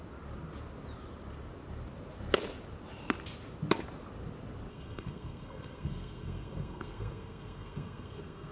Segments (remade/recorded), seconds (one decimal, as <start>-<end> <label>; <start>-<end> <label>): 0.0-4.7 recorded; 4.7-8.5 remade